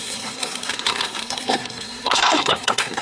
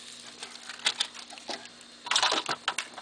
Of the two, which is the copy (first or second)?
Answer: first